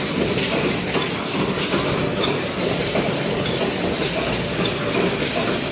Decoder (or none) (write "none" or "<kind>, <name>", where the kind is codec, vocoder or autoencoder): none